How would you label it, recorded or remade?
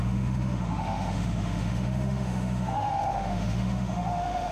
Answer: remade